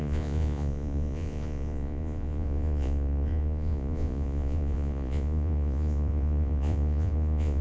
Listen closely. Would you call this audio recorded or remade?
remade